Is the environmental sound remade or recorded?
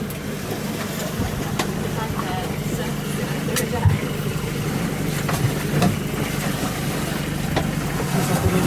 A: recorded